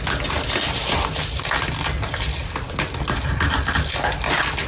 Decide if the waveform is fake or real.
real